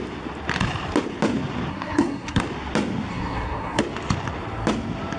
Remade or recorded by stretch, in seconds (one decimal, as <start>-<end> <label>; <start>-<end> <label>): 0.0-1.7 recorded; 1.7-2.4 remade; 2.4-3.1 recorded; 3.1-3.8 remade; 3.8-5.2 recorded